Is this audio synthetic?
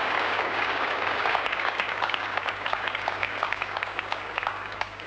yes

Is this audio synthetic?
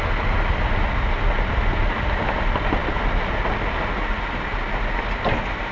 no